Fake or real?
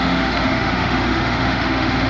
fake